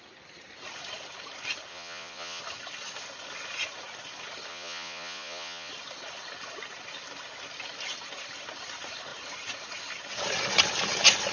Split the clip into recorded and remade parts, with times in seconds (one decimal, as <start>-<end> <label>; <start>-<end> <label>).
0.0-1.7 recorded; 1.7-2.4 remade; 2.4-4.5 recorded; 4.5-5.7 remade; 5.7-11.3 recorded